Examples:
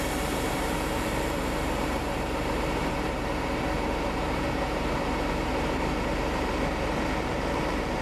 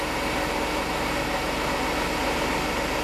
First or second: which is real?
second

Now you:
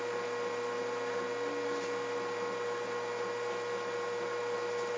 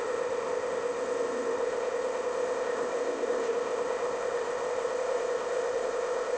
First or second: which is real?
first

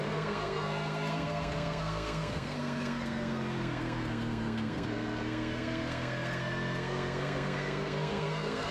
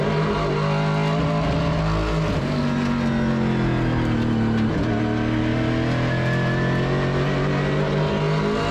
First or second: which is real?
second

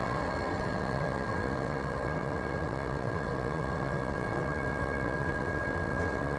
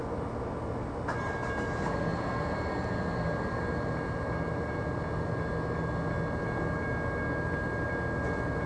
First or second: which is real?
second